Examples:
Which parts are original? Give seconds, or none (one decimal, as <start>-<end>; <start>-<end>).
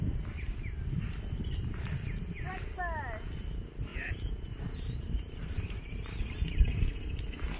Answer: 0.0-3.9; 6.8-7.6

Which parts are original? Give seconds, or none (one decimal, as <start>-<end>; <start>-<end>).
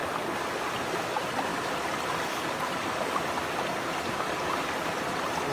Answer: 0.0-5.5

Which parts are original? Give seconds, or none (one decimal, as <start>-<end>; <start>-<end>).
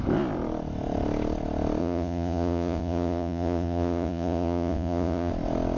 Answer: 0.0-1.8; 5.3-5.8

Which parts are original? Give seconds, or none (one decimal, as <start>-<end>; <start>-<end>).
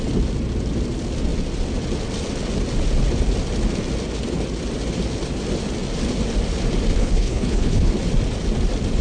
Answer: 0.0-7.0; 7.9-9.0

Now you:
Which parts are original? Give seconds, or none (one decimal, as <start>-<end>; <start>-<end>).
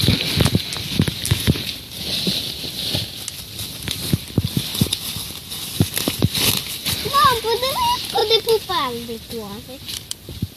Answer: 0.0-10.6